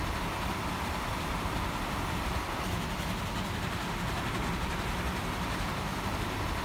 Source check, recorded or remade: recorded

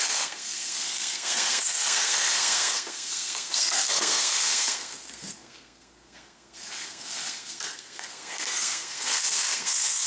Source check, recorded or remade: remade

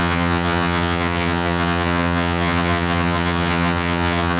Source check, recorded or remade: remade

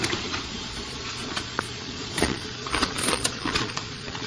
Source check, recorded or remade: remade